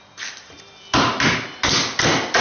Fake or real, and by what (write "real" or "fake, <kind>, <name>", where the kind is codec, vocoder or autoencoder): real